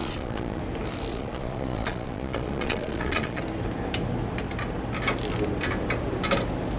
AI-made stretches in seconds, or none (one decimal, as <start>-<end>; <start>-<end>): 0.0-0.6; 1.1-3.4